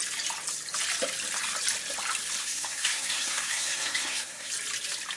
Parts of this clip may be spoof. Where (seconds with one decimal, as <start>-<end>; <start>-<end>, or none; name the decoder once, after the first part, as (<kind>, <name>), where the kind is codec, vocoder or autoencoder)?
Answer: 2.4-4.5 (codec, SNAC)